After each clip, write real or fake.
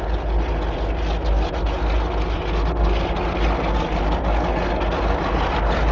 real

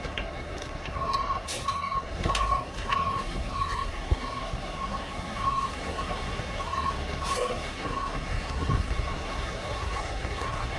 fake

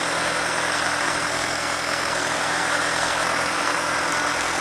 fake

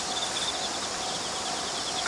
real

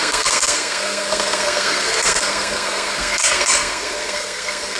fake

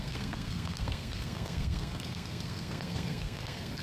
fake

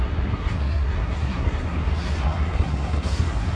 fake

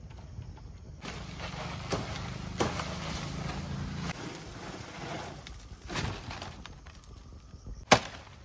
real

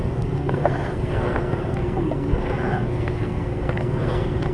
fake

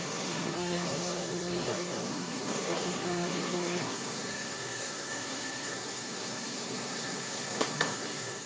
fake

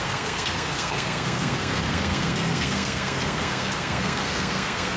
fake